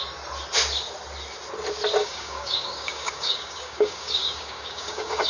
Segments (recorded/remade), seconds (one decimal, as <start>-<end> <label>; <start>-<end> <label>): 0.0-2.0 recorded; 2.0-5.3 remade